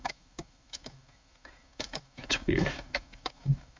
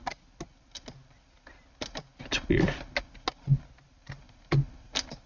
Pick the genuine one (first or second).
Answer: second